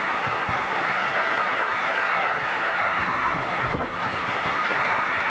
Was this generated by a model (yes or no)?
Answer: yes